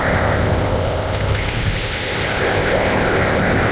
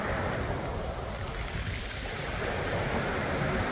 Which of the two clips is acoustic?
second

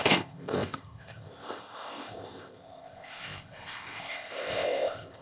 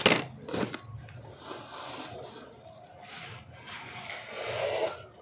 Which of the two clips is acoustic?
second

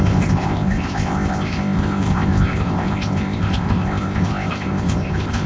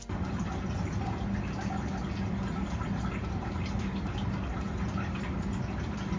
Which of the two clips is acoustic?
second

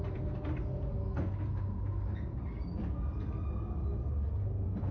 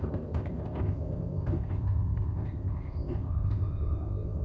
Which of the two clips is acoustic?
first